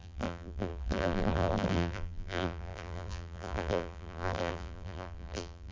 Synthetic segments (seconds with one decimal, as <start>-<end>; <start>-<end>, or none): 0.0-5.7